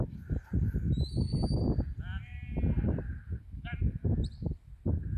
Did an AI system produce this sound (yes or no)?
no